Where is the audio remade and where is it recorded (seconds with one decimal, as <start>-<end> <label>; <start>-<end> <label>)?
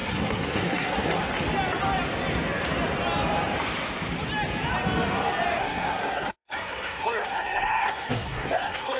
0.0-1.2 remade; 1.2-5.6 recorded; 5.6-9.0 remade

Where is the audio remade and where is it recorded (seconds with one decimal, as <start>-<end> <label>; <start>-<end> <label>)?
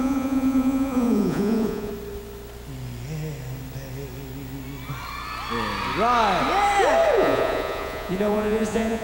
0.0-1.9 remade; 1.9-7.1 recorded; 7.1-9.0 remade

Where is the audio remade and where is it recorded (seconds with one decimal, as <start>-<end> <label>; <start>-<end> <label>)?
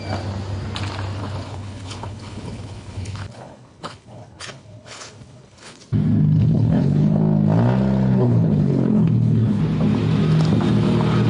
0.0-1.2 recorded; 1.2-5.8 remade; 5.8-6.4 recorded; 6.4-7.2 remade; 7.2-8.1 recorded; 8.1-9.6 remade; 9.6-11.3 recorded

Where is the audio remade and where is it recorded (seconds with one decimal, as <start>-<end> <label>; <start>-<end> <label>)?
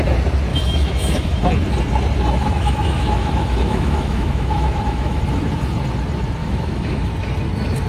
0.0-0.5 recorded; 0.5-1.5 remade; 1.5-2.4 recorded; 2.4-5.2 remade; 5.2-6.4 recorded; 6.4-7.1 remade; 7.1-7.9 recorded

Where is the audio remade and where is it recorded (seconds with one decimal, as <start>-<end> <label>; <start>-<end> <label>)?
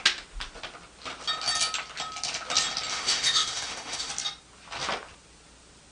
0.0-2.9 recorded; 2.9-4.1 remade; 4.1-5.9 recorded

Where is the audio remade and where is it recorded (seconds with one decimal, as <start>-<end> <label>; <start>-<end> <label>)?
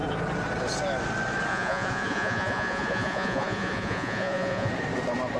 0.0-1.5 recorded; 1.5-4.7 remade; 4.7-5.4 recorded